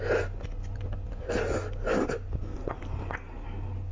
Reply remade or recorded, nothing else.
recorded